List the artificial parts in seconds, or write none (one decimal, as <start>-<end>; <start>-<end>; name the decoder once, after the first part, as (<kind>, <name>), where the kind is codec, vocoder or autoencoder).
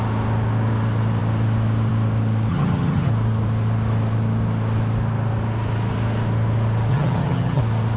2.5-3.1 (vocoder, HiFi-GAN); 6.9-7.6